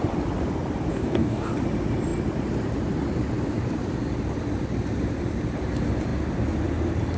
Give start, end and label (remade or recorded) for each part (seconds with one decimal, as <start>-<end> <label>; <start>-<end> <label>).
0.0-0.9 recorded; 0.9-1.5 remade; 1.5-7.2 recorded